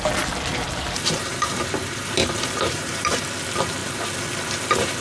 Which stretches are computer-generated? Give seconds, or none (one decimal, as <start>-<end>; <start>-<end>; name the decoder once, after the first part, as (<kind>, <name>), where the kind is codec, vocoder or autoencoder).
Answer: 0.5-3.2 (vocoder, BigVGAN v2)